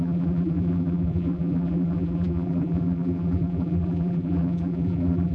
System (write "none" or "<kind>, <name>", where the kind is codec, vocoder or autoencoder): vocoder, BigVGAN v2